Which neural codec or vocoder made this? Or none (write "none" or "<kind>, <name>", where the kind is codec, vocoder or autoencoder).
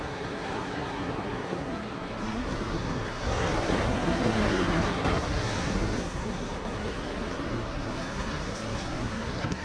codec, SNAC